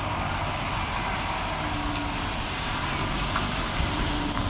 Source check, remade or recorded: recorded